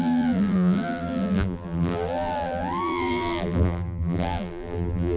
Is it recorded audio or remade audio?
remade